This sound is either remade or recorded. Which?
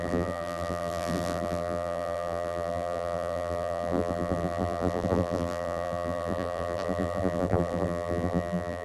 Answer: remade